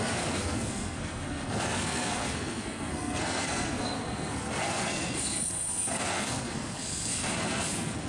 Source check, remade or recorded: remade